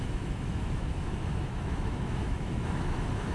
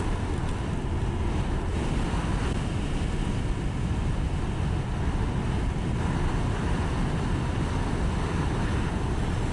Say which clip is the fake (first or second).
first